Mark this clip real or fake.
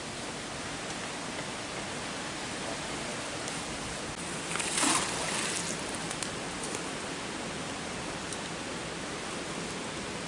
real